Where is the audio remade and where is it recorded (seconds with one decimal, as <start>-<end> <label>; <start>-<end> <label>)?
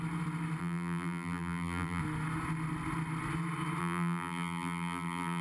0.0-0.6 recorded; 0.6-2.0 remade; 2.0-3.8 recorded; 3.8-5.4 remade